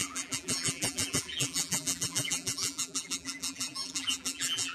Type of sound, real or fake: fake